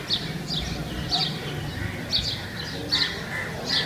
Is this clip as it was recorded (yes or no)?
yes